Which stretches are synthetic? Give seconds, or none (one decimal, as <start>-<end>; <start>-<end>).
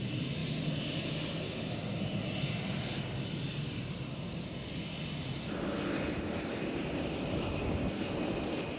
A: none